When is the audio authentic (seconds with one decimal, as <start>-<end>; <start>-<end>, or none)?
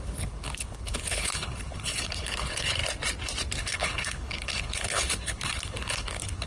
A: 2.8-3.6